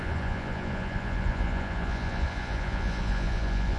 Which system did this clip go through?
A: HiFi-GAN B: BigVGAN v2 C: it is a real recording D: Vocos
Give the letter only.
D